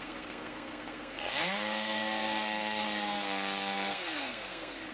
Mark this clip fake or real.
fake